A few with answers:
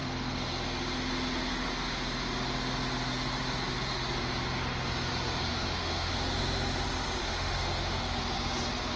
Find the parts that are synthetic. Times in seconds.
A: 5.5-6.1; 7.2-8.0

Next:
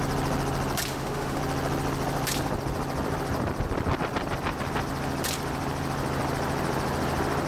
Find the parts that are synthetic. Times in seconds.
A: 0.9-1.4

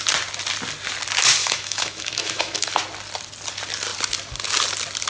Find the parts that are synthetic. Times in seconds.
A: 1.4-2.7

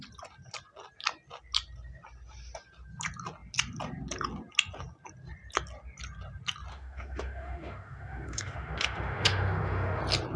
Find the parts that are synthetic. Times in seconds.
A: 6.7-10.0

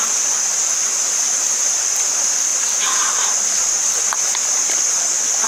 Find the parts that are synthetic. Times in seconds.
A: none

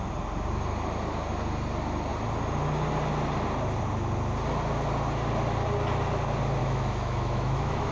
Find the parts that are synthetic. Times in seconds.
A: 6.6-7.9